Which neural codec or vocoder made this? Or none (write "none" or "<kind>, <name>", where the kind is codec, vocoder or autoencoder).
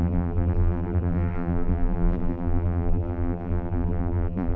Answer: vocoder, BigVGAN v2